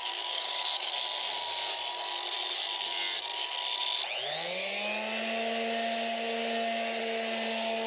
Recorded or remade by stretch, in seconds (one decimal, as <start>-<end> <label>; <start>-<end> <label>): 0.0-0.9 remade; 0.9-7.9 recorded